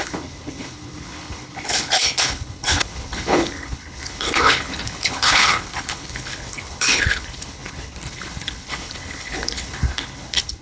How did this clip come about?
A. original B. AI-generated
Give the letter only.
B